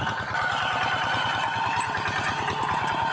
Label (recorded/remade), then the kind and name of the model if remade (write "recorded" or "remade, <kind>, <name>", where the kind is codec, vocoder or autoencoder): recorded